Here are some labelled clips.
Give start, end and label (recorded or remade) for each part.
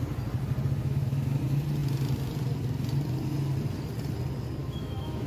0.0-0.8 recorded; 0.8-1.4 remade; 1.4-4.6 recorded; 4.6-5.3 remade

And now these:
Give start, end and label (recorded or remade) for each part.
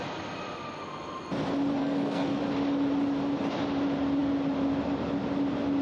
0.0-1.8 recorded; 1.8-2.4 remade; 2.4-5.8 recorded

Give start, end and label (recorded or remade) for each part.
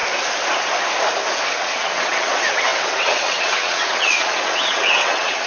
0.0-1.5 recorded; 1.5-5.5 remade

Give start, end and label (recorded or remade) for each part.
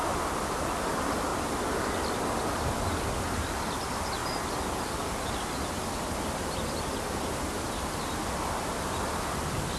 0.0-1.3 recorded; 1.3-1.9 remade; 1.9-9.8 recorded